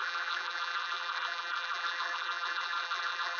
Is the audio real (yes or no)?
no